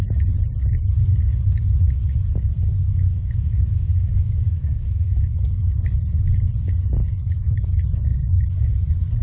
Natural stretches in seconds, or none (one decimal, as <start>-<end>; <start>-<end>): 0.0-2.8; 5.7-7.0; 7.6-8.1; 8.6-9.2

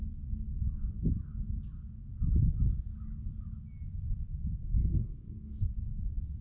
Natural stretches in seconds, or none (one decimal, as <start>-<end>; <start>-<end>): 0.0-4.8; 5.6-6.4

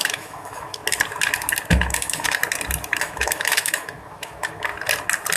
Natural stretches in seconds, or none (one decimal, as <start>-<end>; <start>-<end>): 0.8-1.7; 2.4-3.0; 4.7-5.4

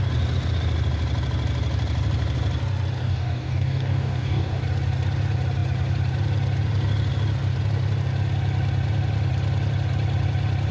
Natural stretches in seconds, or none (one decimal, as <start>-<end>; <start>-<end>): 0.0-3.0; 4.6-10.7

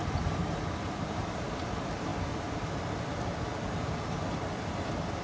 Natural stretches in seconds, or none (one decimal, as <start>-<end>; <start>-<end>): 0.0-1.0; 2.1-5.2

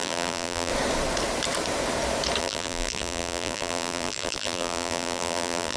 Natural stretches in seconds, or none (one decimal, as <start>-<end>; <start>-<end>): 0.7-2.4

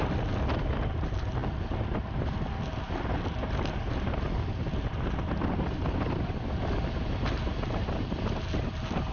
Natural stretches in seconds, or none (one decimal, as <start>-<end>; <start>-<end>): 0.0-9.1

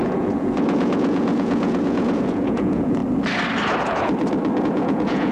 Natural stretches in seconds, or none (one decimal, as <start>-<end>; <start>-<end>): 3.0-4.6